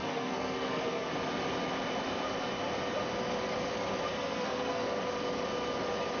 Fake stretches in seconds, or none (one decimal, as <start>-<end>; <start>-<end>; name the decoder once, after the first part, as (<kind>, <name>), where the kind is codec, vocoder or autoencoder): 0.0-1.1 (codec, SNAC); 4.1-5.0